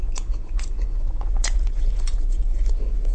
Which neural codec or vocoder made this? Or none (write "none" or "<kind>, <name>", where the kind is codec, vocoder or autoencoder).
vocoder, Vocos